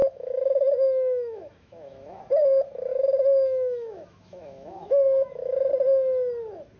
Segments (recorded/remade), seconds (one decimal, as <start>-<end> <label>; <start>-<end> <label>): 0.0-2.2 remade; 2.2-2.9 recorded; 2.9-5.7 remade; 5.7-6.8 recorded